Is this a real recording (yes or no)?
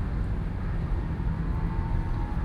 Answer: yes